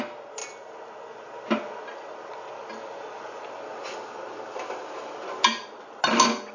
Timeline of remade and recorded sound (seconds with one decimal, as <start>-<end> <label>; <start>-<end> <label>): 0.0-6.5 recorded